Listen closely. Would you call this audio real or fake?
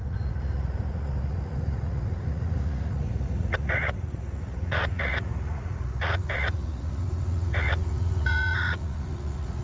fake